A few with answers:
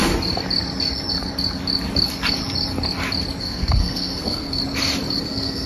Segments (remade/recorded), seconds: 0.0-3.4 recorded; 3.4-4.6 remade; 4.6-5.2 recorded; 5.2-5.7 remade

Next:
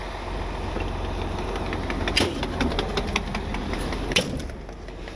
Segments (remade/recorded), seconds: 0.0-5.2 recorded

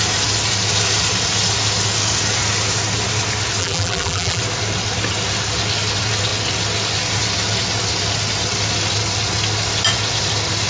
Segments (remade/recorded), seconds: 0.0-3.6 recorded; 3.6-4.4 remade; 4.4-10.7 recorded